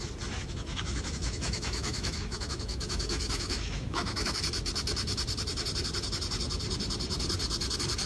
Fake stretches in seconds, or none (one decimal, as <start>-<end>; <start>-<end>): 0.4-4.4